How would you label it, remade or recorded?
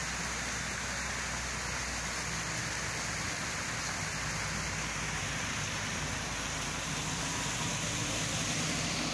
recorded